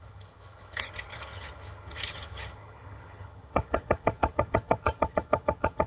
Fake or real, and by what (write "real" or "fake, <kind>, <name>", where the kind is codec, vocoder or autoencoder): fake, vocoder, HiFi-GAN